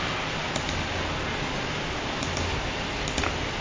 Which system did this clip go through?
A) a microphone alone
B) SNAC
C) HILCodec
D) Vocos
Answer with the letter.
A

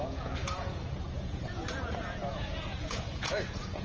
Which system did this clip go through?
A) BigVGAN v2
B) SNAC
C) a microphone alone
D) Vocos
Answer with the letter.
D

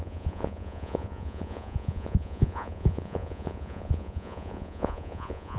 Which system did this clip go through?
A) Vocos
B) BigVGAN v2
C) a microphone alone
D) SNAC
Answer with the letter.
A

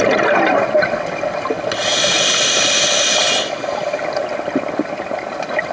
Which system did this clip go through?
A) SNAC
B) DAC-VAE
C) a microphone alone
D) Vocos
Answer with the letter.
C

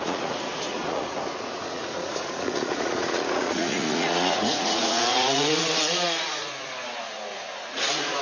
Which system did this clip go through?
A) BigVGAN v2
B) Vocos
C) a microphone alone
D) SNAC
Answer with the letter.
B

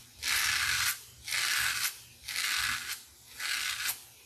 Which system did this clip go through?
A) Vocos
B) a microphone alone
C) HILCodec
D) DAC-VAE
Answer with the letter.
B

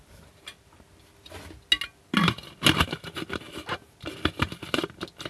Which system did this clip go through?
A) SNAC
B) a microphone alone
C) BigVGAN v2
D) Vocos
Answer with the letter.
B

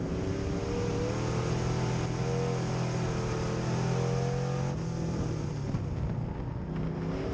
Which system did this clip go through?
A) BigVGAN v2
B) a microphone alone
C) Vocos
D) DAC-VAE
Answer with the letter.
B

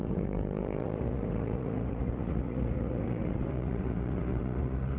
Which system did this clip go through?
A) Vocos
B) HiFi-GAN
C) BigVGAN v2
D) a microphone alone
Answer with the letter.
A